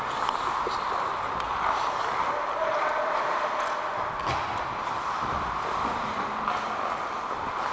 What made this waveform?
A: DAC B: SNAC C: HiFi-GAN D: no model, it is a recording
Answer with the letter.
D